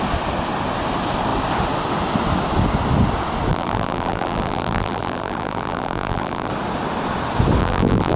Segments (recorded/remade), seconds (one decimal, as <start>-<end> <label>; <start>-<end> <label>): 0.0-3.5 recorded; 3.5-6.5 remade; 6.5-7.6 recorded; 7.6-8.2 remade